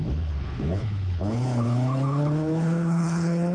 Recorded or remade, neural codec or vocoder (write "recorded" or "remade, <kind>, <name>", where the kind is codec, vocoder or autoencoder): remade, codec, HILCodec